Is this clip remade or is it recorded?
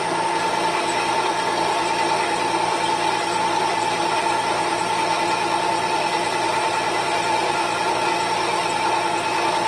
recorded